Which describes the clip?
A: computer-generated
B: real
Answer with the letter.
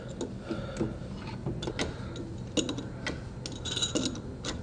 B